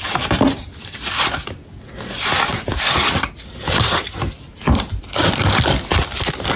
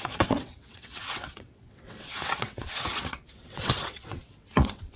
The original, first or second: first